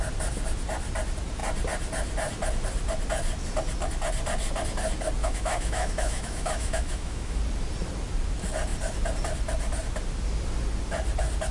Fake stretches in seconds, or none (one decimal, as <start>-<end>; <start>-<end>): 5.2-7.4